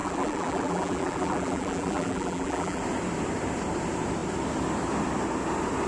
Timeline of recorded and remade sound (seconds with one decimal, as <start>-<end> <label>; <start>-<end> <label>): 0.0-2.8 remade; 2.8-5.9 recorded

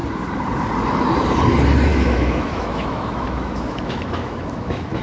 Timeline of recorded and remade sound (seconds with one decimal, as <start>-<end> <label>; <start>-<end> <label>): 0.0-1.9 recorded; 1.9-5.0 remade

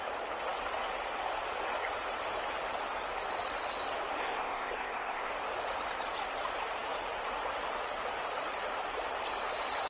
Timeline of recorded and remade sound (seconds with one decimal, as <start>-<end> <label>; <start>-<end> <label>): 0.0-4.2 recorded; 4.2-5.3 remade; 5.3-9.9 recorded

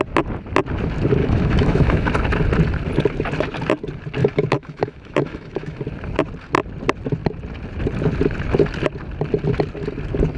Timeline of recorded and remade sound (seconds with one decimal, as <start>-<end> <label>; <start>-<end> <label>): 0.0-1.2 recorded; 1.2-2.1 remade; 2.1-4.2 recorded; 4.2-5.8 remade; 5.8-10.4 recorded

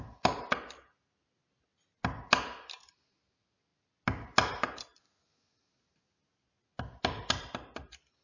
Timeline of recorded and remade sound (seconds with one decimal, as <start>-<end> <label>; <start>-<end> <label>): 0.0-8.2 recorded

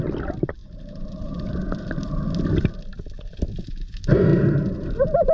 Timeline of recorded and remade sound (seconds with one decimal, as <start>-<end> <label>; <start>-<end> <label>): 0.0-0.6 recorded; 0.6-1.4 remade; 1.4-4.3 recorded; 4.3-5.3 remade